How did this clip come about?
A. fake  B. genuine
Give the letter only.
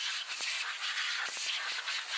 B